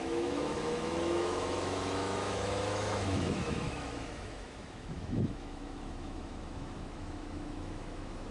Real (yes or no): no